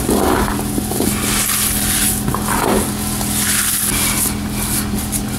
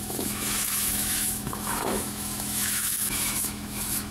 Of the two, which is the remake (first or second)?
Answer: second